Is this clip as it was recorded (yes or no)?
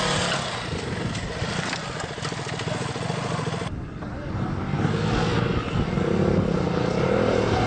yes